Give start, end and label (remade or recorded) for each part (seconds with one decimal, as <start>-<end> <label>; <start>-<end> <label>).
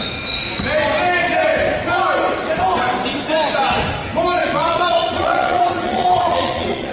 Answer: 0.0-4.4 recorded; 4.4-6.9 remade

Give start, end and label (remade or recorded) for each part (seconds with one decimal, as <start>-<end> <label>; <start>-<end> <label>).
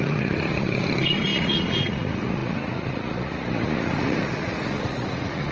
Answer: 0.0-5.5 remade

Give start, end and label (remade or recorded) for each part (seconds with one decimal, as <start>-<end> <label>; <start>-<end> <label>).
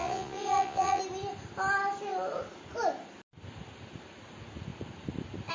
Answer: 0.0-1.0 remade; 1.0-5.5 recorded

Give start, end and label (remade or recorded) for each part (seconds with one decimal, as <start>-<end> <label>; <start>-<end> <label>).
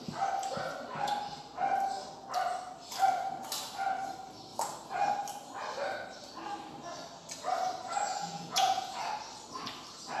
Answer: 0.0-8.1 recorded; 8.1-9.1 remade; 9.1-10.2 recorded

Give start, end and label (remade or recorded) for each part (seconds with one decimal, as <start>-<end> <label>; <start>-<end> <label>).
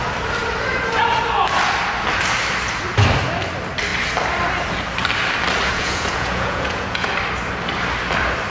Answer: 0.0-5.7 recorded; 5.7-7.1 remade; 7.1-8.5 recorded